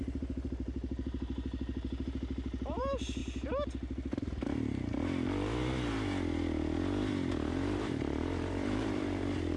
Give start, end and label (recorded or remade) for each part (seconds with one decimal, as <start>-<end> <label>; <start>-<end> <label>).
0.0-3.2 remade; 3.2-7.5 recorded; 7.5-9.6 remade

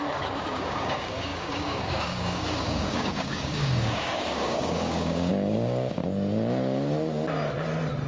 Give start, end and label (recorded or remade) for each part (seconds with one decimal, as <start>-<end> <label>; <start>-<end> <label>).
0.0-6.0 remade; 6.0-8.1 recorded

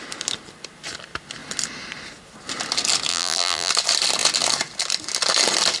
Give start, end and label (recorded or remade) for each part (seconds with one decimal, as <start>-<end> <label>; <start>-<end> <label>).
0.0-3.1 recorded; 3.1-3.7 remade; 3.7-5.8 recorded

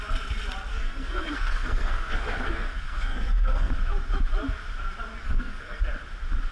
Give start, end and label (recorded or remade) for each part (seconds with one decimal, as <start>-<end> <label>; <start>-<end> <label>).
0.0-0.7 recorded; 0.7-3.7 remade; 3.7-5.2 recorded; 5.2-5.8 remade; 5.8-6.5 recorded